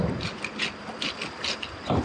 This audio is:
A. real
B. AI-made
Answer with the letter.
B